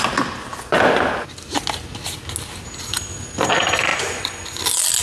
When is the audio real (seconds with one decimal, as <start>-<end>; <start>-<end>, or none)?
0.0-3.9; 4.6-5.0